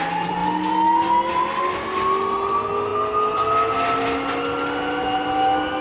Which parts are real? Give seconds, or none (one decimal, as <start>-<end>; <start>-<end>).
0.0-5.8